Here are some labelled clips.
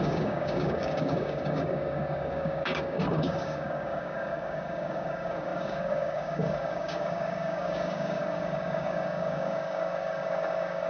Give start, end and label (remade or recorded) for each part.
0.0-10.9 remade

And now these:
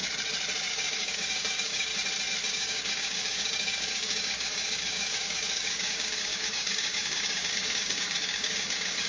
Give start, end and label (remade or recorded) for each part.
0.0-0.7 recorded; 0.7-1.9 remade; 1.9-2.5 recorded; 2.5-9.1 remade

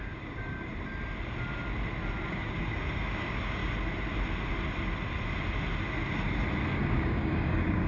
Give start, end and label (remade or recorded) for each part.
0.0-0.7 remade; 0.7-2.3 recorded; 2.3-3.6 remade; 3.6-6.8 recorded; 6.8-7.9 remade

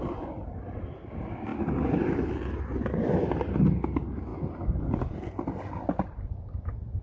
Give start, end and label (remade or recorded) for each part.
0.0-7.0 recorded

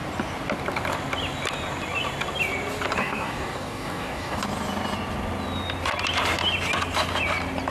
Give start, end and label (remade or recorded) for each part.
0.0-3.0 recorded; 3.0-4.4 remade; 4.4-7.7 recorded

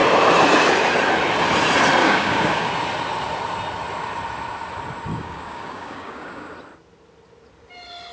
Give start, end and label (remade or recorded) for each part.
0.0-2.0 recorded; 2.0-2.7 remade; 2.7-5.1 recorded; 5.1-6.5 remade; 6.5-8.1 recorded

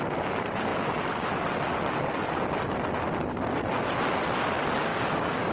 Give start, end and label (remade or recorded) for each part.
0.0-4.9 recorded; 4.9-5.5 remade